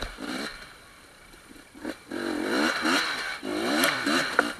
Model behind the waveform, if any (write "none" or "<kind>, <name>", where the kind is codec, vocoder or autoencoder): vocoder, BigVGAN v2